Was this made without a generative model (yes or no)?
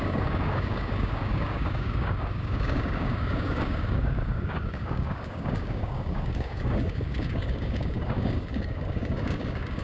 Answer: no